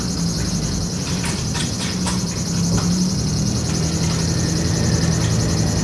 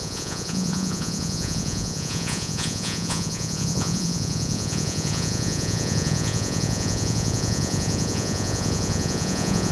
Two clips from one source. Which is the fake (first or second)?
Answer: second